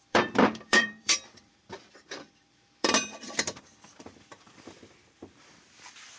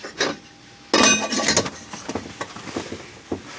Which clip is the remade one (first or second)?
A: first